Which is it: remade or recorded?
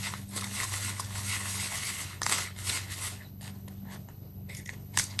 remade